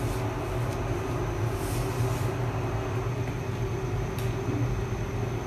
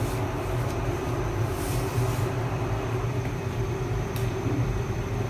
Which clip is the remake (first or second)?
second